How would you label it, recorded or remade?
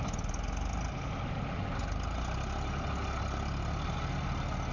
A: recorded